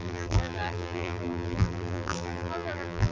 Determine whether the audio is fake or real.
fake